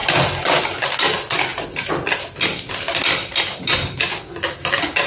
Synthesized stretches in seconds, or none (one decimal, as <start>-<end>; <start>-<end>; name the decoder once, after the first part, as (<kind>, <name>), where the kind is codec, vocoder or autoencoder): none